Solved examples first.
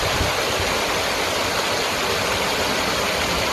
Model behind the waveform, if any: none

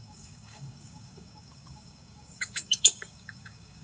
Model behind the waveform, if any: codec, DAC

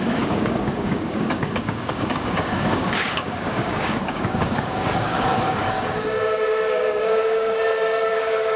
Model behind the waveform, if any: codec, DAC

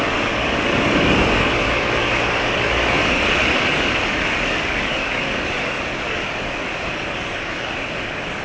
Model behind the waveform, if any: codec, DAC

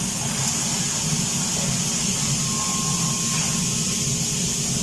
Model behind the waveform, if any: none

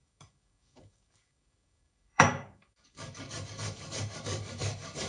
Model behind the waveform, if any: codec, DAC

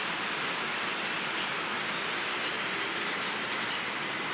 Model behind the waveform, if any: none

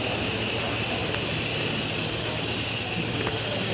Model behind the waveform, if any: none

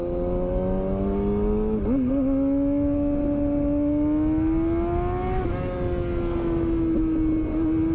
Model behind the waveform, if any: none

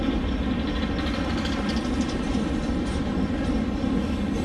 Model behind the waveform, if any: none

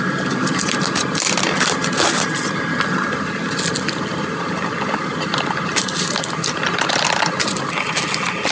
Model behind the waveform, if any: none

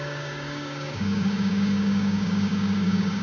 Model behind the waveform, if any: codec, DAC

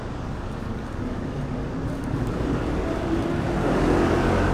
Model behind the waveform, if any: codec, DAC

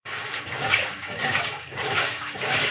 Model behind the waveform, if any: codec, DAC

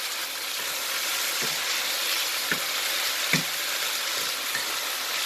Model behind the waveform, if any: none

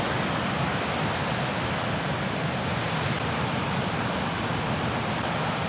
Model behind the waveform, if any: none